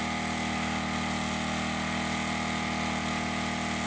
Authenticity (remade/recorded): recorded